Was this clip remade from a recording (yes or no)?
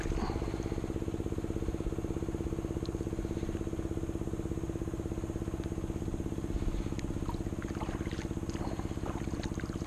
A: no